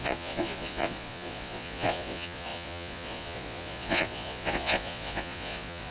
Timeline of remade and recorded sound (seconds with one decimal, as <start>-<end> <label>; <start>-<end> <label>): 0.0-5.9 remade